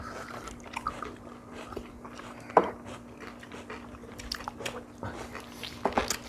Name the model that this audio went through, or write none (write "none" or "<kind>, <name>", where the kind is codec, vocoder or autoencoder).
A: none